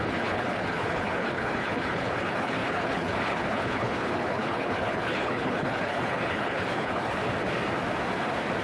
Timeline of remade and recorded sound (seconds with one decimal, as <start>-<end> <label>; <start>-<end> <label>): 0.0-7.2 remade; 7.2-8.6 recorded